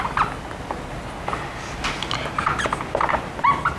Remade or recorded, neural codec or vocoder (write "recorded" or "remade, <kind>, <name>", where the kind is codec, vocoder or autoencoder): recorded